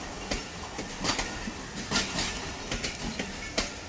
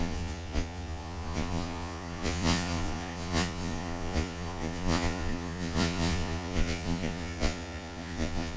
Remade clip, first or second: second